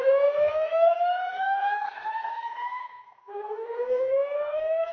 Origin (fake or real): fake